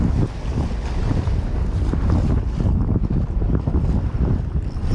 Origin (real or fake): real